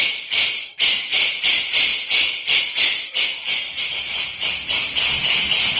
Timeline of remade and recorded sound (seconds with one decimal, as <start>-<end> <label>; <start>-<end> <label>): 0.0-5.8 recorded